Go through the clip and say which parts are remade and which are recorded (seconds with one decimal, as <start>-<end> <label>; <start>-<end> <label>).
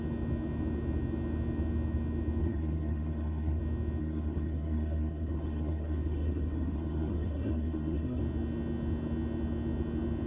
0.0-2.4 recorded; 2.4-3.6 remade; 3.6-4.0 recorded; 4.0-8.2 remade; 8.2-10.3 recorded